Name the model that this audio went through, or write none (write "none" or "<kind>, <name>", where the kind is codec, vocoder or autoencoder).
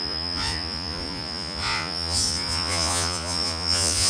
vocoder, Vocos